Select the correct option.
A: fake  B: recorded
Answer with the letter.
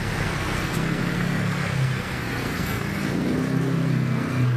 A